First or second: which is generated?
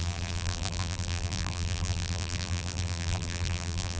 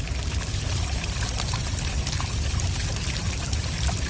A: first